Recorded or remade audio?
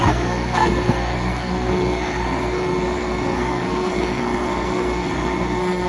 remade